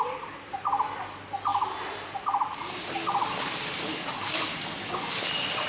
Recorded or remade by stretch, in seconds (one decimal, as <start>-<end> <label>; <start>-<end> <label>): 0.0-5.7 recorded